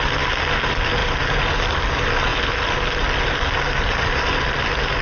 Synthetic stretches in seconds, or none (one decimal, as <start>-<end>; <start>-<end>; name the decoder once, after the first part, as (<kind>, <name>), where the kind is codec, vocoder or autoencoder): none

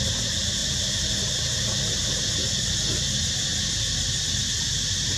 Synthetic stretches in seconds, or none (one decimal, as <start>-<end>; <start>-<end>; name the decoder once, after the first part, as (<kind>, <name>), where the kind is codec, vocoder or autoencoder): 0.6-2.1 (vocoder, BigVGAN v2)

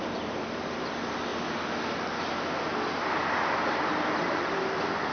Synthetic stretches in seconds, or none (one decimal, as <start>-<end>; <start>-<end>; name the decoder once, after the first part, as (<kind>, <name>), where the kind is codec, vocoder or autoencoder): 0.0-1.3 (vocoder, BigVGAN v2); 4.2-5.1